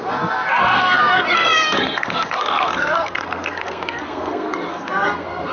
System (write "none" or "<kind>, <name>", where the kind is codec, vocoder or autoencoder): codec, SNAC